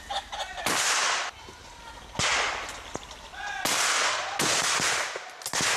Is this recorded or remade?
recorded